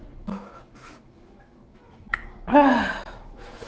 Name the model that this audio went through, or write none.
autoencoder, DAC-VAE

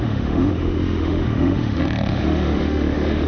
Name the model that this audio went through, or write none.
autoencoder, DAC-VAE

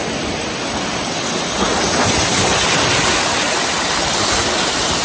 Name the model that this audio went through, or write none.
none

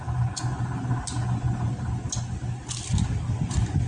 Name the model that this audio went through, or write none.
none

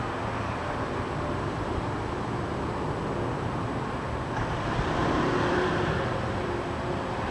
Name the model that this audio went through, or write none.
none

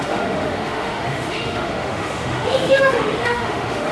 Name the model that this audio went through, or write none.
autoencoder, DAC-VAE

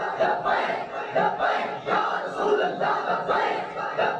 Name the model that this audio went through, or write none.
none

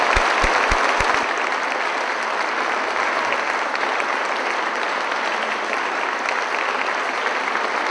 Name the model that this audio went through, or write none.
none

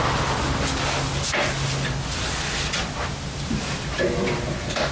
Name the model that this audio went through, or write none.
none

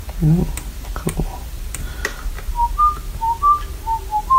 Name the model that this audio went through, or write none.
none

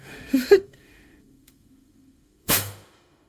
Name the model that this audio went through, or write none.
autoencoder, DAC-VAE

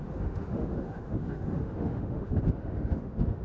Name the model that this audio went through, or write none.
autoencoder, DAC-VAE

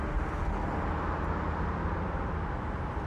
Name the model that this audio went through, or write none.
none